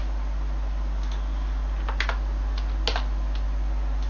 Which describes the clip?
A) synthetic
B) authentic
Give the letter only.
B